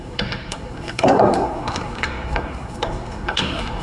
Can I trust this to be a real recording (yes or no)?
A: no